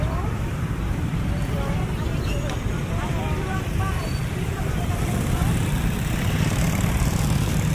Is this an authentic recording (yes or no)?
no